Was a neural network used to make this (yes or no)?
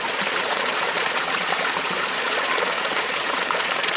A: yes